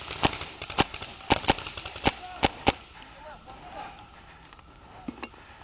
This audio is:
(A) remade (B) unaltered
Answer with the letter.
B